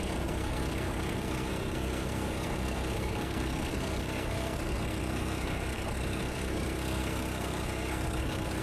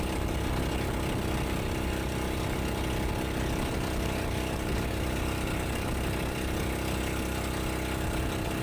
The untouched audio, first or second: second